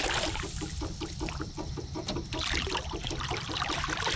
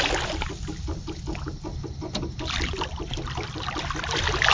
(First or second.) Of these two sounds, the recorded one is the second